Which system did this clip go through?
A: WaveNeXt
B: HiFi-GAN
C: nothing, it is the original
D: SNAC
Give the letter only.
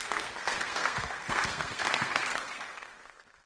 D